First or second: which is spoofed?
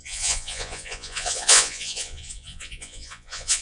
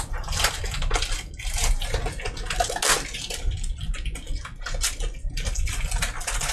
first